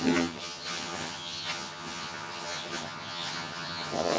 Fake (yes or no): yes